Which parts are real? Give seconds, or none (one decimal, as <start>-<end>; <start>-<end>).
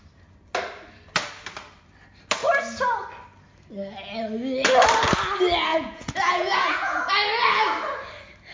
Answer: 0.0-5.7; 7.1-8.5